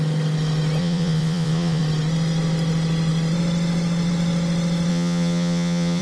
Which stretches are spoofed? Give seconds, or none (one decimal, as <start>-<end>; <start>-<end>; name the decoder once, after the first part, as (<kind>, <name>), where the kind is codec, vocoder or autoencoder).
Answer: 0.8-1.8 (vocoder, Vocos); 4.9-6.0